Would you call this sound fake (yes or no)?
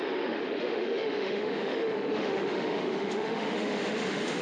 yes